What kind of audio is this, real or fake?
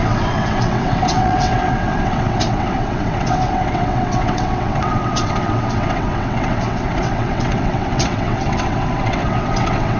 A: fake